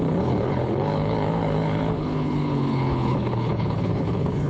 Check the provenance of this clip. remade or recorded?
remade